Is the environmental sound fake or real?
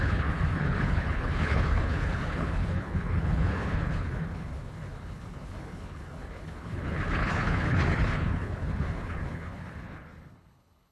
fake